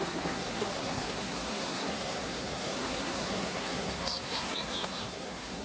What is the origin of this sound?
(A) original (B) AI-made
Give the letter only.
B